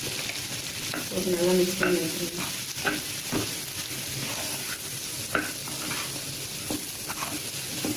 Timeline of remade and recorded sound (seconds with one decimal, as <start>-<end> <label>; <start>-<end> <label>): 0.0-8.0 recorded